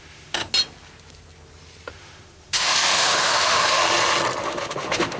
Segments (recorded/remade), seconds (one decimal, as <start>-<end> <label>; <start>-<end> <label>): 0.0-0.5 remade; 0.5-1.9 recorded; 1.9-3.8 remade; 3.8-4.4 recorded; 4.4-5.2 remade